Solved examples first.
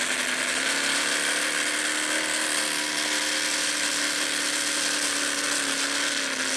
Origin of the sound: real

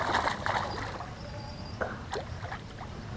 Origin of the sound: real